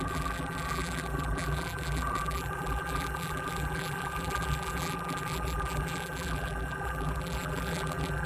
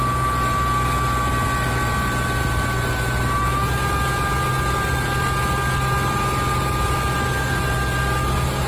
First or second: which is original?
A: second